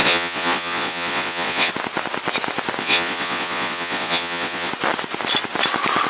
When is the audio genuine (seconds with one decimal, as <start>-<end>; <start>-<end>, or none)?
1.7-2.8; 4.7-6.1